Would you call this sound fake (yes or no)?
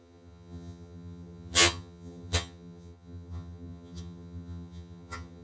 yes